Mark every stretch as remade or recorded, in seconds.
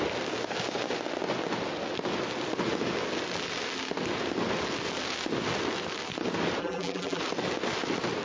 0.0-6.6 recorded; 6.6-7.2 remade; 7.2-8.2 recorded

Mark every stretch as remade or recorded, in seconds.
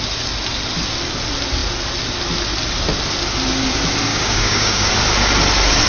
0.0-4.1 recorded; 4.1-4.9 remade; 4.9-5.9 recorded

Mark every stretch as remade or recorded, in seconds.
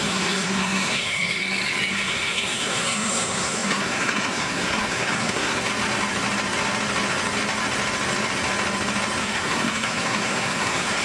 0.0-1.4 remade; 1.4-1.9 recorded; 1.9-5.7 remade; 5.7-9.2 recorded; 9.2-11.0 remade